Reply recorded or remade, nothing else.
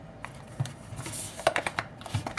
recorded